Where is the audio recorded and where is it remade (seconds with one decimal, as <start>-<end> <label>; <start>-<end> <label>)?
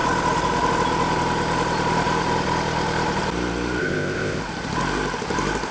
0.0-3.8 recorded; 3.8-4.4 remade; 4.4-5.7 recorded